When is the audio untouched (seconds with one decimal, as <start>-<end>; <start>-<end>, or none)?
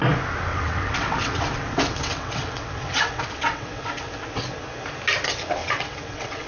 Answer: 0.0-0.5; 4.4-5.6